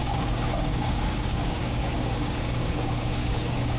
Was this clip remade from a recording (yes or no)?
yes